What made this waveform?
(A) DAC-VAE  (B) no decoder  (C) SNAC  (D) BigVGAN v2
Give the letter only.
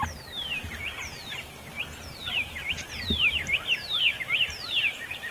D